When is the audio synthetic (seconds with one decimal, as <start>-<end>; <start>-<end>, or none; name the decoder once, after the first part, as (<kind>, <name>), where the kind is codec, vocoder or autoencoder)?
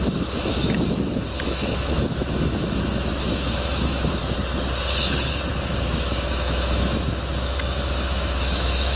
0.0-4.2 (autoencoder, DAC-VAE); 5.5-9.0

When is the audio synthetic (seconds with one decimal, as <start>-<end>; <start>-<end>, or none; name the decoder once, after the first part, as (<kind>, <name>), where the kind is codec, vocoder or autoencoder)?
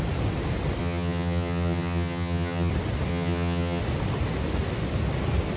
0.8-2.7 (vocoder, HiFi-GAN); 3.1-3.8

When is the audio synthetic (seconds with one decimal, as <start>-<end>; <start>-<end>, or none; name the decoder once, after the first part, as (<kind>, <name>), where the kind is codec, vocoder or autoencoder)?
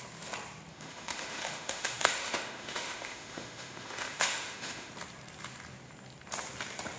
0.7-4.9 (autoencoder, DAC-VAE)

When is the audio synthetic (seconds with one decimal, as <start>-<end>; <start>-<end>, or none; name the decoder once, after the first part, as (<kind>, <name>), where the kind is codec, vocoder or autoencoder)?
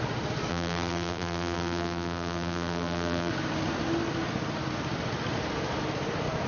0.5-3.3 (vocoder, BigVGAN v2)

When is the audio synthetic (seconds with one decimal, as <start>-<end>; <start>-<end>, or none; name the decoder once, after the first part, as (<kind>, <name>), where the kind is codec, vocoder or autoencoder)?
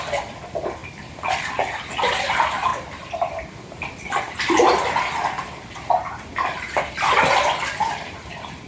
0.8-1.4 (vocoder, BigVGAN v2)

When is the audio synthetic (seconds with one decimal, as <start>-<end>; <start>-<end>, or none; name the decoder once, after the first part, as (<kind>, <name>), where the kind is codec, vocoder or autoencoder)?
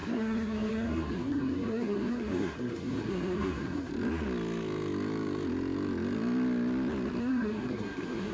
0.0-3.9 (codec, SNAC); 7.2-8.3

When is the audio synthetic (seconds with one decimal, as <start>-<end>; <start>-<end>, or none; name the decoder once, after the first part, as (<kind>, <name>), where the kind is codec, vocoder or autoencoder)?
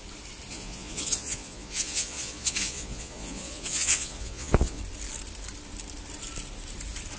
0.5-4.8 (vocoder, Vocos)